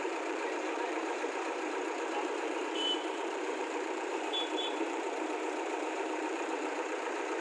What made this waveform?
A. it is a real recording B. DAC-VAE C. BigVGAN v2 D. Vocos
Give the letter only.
C